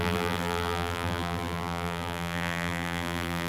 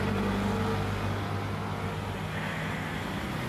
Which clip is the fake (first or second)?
first